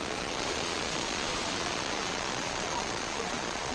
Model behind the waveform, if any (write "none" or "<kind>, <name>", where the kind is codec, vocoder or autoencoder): vocoder, Vocos